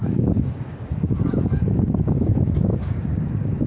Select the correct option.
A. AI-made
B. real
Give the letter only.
A